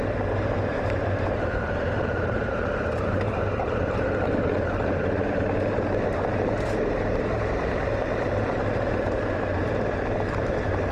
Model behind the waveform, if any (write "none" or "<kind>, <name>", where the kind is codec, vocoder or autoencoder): vocoder, BigVGAN v2